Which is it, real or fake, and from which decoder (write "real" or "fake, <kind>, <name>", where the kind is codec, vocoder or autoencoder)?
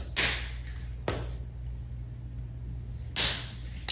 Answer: real